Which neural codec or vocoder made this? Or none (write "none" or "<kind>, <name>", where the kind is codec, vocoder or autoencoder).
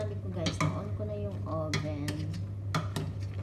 none